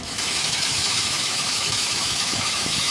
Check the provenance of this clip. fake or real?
fake